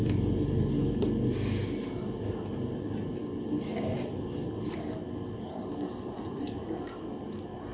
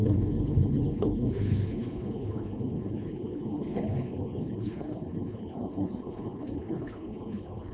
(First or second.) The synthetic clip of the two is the second